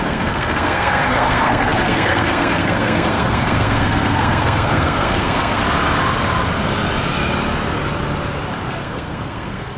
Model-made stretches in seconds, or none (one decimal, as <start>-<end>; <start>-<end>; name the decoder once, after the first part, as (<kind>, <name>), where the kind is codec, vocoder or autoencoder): 0.0-5.6 (codec, SNAC); 8.8-9.8